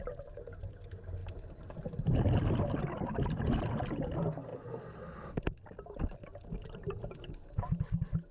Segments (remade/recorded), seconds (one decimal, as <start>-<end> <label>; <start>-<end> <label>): 0.0-8.3 recorded